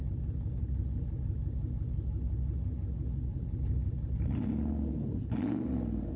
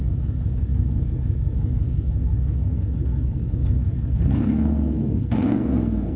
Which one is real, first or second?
first